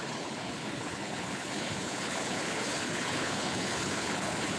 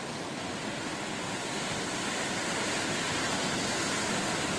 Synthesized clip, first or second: first